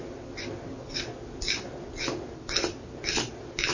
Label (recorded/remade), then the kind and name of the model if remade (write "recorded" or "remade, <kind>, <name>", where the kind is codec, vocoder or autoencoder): recorded